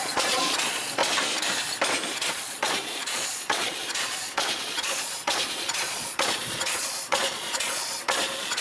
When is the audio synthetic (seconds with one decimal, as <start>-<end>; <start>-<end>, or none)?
0.0-1.0; 2.1-8.6